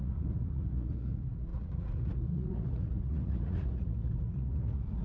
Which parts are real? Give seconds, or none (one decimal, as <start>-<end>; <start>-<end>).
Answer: none